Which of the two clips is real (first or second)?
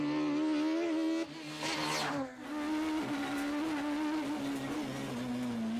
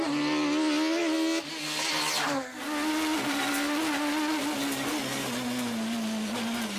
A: first